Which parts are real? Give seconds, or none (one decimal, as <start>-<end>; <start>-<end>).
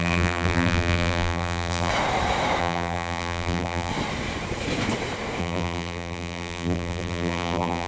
1.9-2.6; 3.9-5.4